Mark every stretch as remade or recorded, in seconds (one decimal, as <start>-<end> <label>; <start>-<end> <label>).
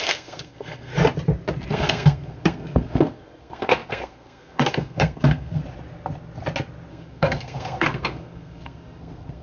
0.0-0.9 remade; 0.9-1.7 recorded; 1.7-5.6 remade; 5.6-6.9 recorded; 6.9-9.4 remade